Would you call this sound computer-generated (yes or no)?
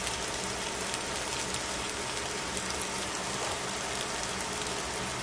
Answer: no